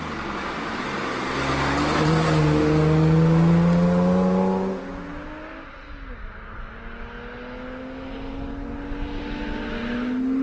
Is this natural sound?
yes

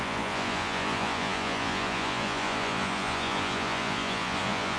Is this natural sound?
no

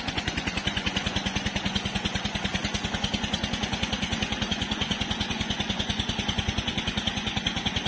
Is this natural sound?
no